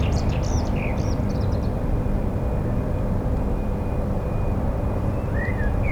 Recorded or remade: remade